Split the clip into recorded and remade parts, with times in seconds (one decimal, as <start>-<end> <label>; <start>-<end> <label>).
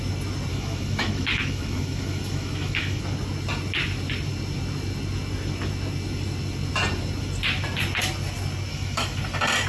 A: 0.0-0.5 recorded; 0.5-3.0 remade; 3.0-8.7 recorded; 8.7-9.2 remade; 9.2-9.7 recorded